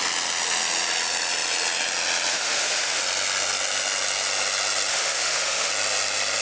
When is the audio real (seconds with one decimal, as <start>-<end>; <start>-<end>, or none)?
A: 0.0-2.3; 3.0-4.9; 5.7-6.4